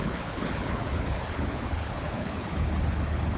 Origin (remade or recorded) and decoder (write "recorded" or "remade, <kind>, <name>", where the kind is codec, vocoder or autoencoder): remade, codec, HILCodec